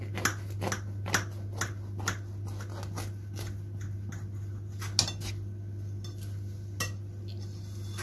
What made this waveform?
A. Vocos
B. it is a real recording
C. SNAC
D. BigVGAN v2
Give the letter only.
B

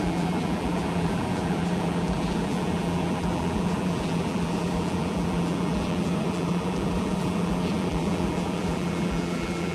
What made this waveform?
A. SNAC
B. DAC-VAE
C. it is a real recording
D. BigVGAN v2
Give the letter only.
D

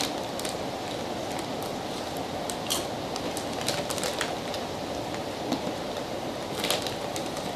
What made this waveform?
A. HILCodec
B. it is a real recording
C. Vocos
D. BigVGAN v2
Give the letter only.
B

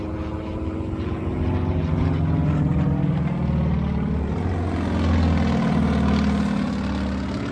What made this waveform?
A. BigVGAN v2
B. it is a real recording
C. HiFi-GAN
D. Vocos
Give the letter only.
B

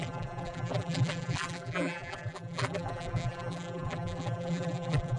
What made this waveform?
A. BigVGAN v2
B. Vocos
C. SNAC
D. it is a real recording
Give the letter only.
A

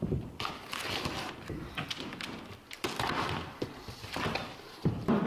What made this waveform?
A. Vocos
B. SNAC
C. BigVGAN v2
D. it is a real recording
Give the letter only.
C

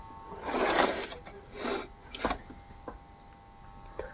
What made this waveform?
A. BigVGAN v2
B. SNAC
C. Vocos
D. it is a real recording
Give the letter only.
D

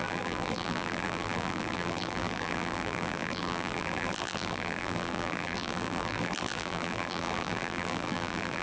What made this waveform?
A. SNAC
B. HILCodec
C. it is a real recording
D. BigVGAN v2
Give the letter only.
D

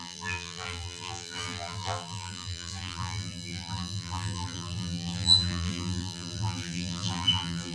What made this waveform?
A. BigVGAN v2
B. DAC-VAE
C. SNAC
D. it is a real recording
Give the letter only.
A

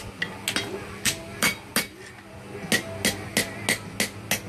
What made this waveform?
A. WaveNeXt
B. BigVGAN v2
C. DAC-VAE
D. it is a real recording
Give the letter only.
D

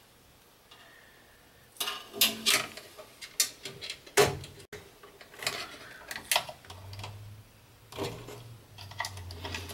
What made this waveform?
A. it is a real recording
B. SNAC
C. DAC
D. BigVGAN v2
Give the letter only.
A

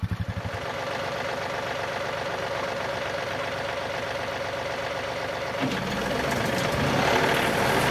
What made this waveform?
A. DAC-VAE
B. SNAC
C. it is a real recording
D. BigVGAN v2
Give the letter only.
C